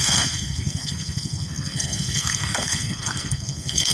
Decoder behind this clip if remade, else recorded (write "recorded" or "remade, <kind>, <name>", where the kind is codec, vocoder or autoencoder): remade, codec, SNAC